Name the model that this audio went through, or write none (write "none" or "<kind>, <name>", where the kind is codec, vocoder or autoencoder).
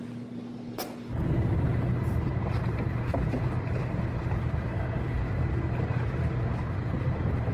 none